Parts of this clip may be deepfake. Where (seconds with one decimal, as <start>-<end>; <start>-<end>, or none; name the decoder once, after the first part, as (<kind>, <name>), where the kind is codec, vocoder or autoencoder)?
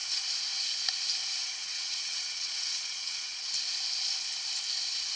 1.2-3.5 (vocoder, WaveNeXt)